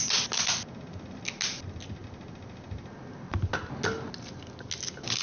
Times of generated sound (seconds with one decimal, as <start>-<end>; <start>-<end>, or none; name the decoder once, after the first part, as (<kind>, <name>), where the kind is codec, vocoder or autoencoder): none